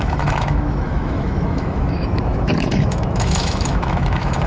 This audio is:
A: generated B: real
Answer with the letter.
A